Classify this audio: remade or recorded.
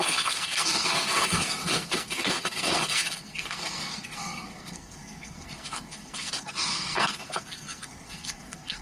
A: remade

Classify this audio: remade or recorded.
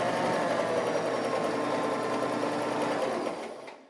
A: recorded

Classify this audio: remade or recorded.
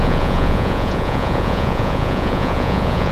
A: remade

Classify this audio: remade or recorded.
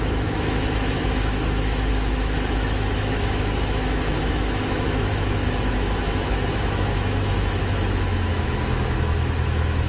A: remade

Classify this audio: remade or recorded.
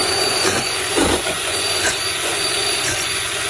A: remade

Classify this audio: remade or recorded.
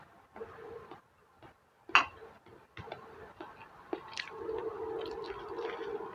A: recorded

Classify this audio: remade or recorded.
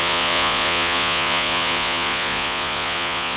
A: remade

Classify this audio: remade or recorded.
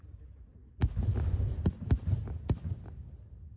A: recorded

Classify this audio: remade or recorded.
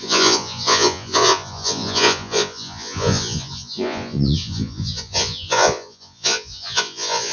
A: remade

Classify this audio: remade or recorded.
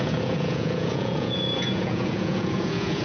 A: remade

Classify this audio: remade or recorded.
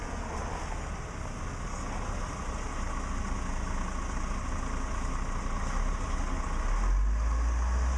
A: recorded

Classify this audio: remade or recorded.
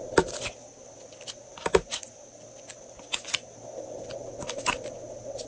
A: recorded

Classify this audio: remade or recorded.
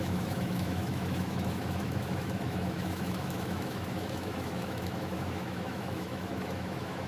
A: remade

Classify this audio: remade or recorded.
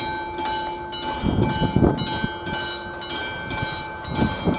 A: recorded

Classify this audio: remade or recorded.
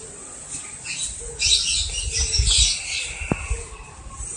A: recorded